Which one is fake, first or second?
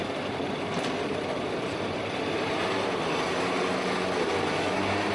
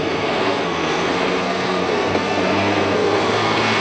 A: second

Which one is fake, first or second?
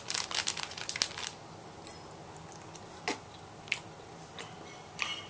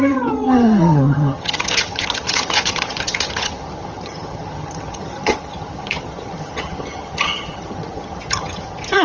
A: second